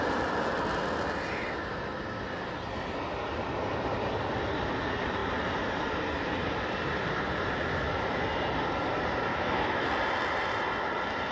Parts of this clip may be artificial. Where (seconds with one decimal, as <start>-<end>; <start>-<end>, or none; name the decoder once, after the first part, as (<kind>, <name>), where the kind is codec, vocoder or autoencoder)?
9.3-9.9 (autoencoder, DAC-VAE)